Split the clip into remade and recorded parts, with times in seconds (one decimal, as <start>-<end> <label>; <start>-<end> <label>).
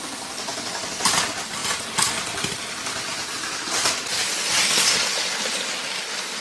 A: 0.0-6.4 recorded